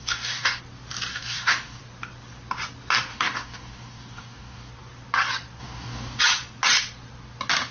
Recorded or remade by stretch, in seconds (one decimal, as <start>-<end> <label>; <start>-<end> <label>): 0.0-0.6 remade; 0.6-1.1 recorded; 1.1-1.8 remade; 1.8-3.1 recorded; 3.1-4.7 remade; 4.7-5.6 recorded; 5.6-6.2 remade; 6.2-7.7 recorded